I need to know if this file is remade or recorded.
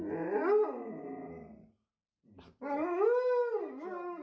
recorded